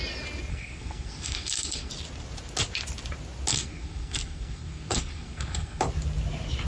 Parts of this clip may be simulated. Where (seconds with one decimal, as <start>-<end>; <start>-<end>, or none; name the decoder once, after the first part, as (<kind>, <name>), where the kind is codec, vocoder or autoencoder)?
0.5-1.9 (codec, SNAC); 3.5-5.8